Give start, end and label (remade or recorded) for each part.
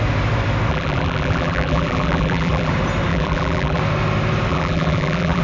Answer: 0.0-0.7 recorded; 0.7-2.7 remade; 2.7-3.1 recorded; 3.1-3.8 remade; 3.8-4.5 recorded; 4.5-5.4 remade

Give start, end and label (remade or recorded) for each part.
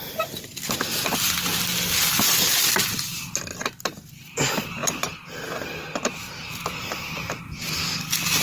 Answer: 0.0-8.4 recorded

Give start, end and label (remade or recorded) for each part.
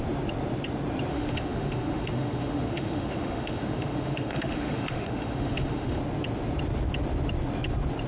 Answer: 0.0-1.1 recorded; 1.1-6.0 remade; 6.0-8.1 recorded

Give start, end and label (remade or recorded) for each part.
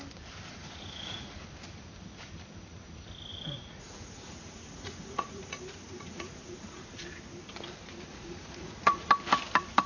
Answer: 0.0-0.6 recorded; 0.6-1.4 remade; 1.4-3.3 recorded; 3.3-6.8 remade; 6.8-8.1 recorded; 8.1-9.1 remade; 9.1-9.9 recorded